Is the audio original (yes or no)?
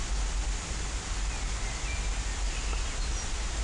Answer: yes